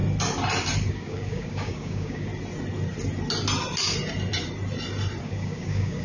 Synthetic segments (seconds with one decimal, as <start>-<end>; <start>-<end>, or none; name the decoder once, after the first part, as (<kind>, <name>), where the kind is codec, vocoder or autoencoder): 0.9-2.3 (codec, DAC); 5.2-6.0